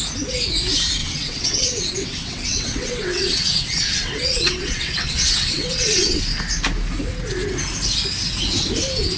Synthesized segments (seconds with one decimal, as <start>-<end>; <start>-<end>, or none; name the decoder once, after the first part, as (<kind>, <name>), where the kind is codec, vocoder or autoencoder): 1.0-6.2 (vocoder, WaveNeXt)